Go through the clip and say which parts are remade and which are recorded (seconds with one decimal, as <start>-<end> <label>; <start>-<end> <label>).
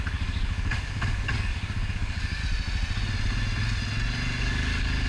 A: 0.0-2.4 remade; 2.4-4.4 recorded; 4.4-5.1 remade